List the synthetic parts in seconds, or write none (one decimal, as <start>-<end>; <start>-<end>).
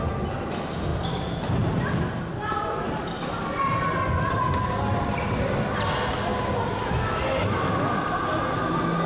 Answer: 0.9-1.7; 6.3-6.9